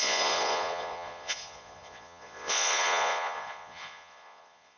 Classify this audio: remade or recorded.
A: remade